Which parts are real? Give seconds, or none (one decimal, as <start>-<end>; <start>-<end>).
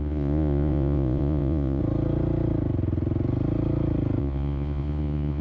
1.8-4.2